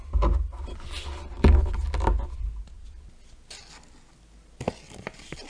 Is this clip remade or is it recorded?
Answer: recorded